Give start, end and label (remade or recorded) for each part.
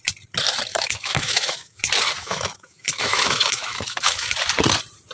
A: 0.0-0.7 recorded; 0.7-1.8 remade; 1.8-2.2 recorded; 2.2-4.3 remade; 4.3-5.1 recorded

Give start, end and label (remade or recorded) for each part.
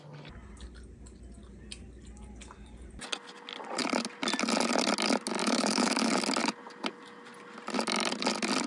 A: 0.0-5.4 recorded; 5.4-6.1 remade; 6.1-8.7 recorded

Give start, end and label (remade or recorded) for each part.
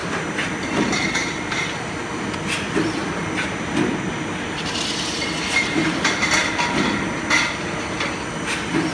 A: 0.0-8.9 recorded